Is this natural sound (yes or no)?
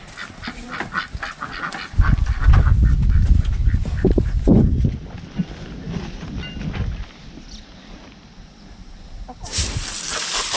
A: yes